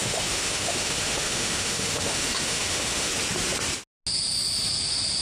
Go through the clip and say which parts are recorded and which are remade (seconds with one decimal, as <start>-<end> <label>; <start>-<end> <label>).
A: 0.0-3.1 remade; 3.1-5.2 recorded